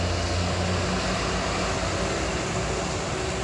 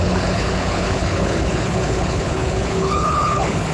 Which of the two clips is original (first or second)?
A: first